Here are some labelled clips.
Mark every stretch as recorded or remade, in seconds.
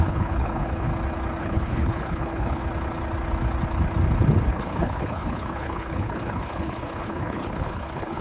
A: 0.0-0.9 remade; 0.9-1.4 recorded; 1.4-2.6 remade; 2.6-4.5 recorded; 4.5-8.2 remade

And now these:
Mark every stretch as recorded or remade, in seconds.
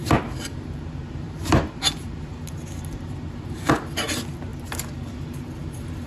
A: 0.0-3.7 remade; 3.7-4.5 recorded; 4.5-6.1 remade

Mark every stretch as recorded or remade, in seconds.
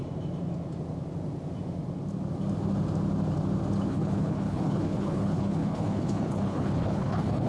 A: 0.0-3.9 recorded; 3.9-7.5 remade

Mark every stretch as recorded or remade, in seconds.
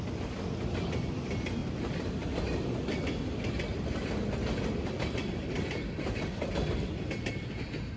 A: 0.0-1.6 recorded; 1.6-6.4 remade; 6.4-8.0 recorded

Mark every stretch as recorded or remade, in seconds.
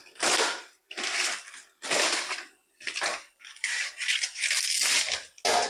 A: 0.0-0.9 remade; 0.9-3.1 recorded; 3.1-3.9 remade; 3.9-5.7 recorded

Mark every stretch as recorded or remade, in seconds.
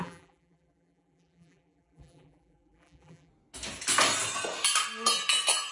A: 0.0-3.3 remade; 3.3-5.7 recorded